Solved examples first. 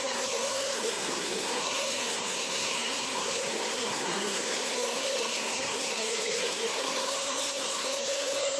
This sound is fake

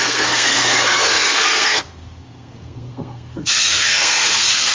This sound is fake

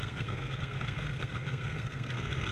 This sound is fake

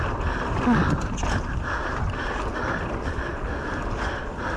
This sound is real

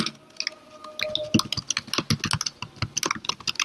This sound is real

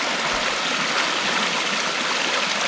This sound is real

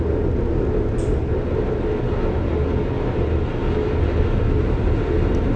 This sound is real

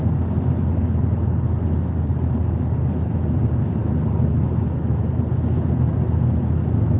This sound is real